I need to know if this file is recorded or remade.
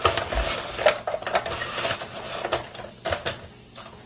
recorded